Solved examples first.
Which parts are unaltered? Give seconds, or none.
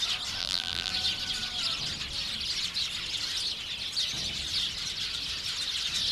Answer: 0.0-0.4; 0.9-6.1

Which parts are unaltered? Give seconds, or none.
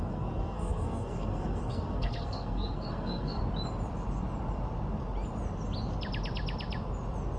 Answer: 3.4-7.4